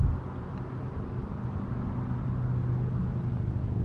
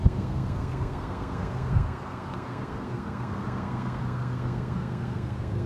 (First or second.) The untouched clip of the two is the first